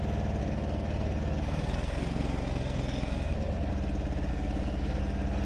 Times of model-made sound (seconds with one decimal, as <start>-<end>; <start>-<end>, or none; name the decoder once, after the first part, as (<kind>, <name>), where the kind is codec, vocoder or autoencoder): 0.4-3.7 (codec, SNAC); 4.3-5.0